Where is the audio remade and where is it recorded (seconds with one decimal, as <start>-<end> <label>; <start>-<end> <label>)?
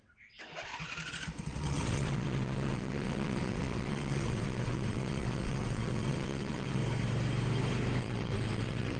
0.0-0.7 remade; 0.7-1.4 recorded; 1.4-6.8 remade; 6.8-8.0 recorded; 8.0-9.0 remade